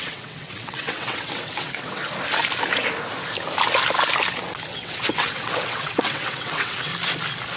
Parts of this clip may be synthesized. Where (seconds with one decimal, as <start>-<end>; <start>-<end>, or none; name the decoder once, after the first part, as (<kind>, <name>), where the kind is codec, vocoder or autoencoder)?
0.0-2.0 (vocoder, WaveNeXt); 4.7-6.9